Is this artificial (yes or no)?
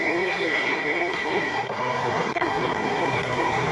yes